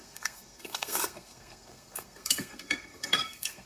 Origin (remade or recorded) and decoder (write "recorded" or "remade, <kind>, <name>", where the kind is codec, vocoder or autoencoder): remade, codec, SNAC